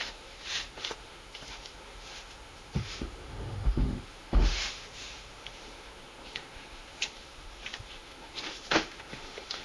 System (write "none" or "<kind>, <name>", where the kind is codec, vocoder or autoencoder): autoencoder, DAC-VAE